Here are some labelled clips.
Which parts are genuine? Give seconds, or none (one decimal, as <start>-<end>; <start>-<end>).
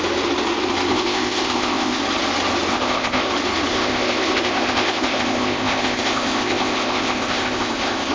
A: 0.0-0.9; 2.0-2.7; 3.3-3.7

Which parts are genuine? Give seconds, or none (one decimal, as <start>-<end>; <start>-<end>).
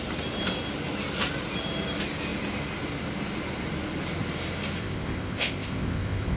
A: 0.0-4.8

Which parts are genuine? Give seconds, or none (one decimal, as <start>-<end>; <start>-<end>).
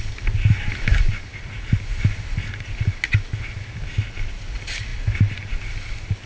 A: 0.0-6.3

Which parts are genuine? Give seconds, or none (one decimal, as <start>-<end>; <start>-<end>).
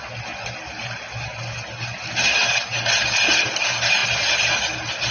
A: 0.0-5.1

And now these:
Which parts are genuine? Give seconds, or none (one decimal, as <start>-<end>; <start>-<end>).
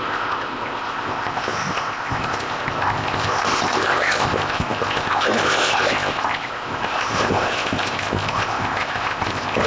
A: none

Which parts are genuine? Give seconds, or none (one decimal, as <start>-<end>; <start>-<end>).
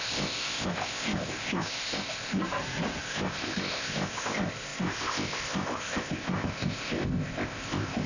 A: 2.4-3.0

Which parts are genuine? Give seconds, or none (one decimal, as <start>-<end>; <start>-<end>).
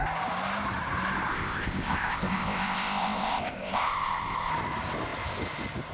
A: 0.0-1.3; 4.5-5.9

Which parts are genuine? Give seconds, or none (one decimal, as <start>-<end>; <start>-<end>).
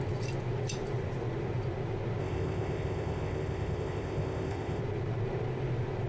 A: 0.0-2.2; 4.8-6.1